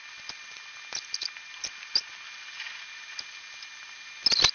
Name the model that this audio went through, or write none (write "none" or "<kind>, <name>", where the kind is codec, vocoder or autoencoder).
none